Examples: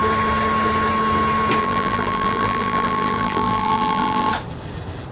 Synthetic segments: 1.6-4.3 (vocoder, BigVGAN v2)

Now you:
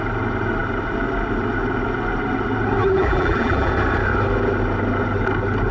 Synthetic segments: 2.8-3.7 (vocoder, BigVGAN v2)